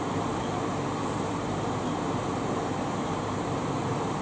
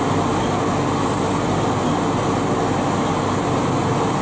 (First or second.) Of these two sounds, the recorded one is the second